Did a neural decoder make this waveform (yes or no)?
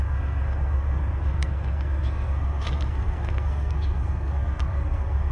yes